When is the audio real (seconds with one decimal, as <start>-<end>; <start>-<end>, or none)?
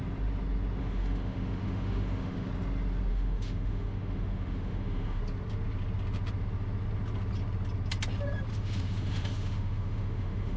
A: 0.0-0.8; 2.5-3.1; 5.2-8.5